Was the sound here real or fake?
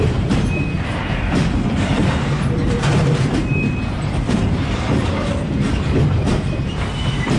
fake